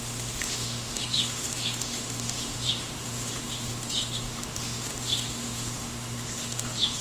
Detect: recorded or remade remade